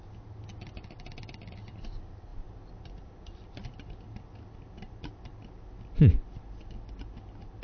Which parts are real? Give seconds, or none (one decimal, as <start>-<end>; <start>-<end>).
0.0-7.6